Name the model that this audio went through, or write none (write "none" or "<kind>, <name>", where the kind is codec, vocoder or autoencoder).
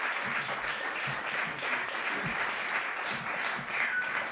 none